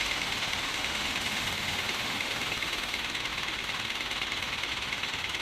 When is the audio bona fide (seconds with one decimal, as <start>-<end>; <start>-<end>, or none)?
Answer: none